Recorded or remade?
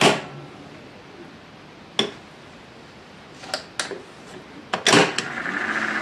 recorded